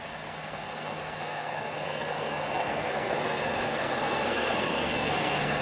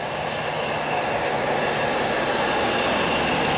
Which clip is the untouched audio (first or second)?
second